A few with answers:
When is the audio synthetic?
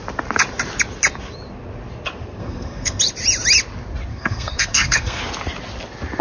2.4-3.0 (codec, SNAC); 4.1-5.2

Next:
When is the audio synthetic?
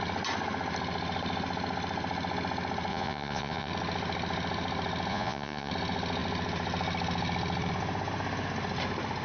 2.9-3.7 (vocoder, Vocos); 5.1-5.7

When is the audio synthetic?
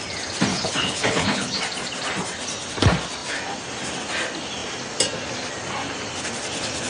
0.5-1.6 (codec, HILCodec)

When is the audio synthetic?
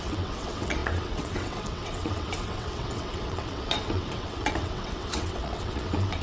0.0-6.2 (vocoder, WaveNeXt)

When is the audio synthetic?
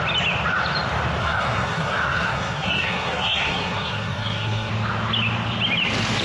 1.2-4.7 (codec, SNAC)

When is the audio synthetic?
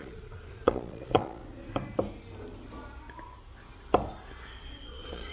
0.0-1.4 (vocoder, Vocos); 4.6-5.3